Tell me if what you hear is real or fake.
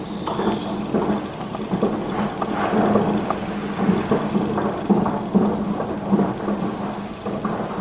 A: real